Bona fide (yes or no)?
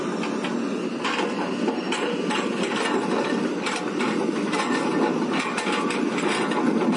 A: yes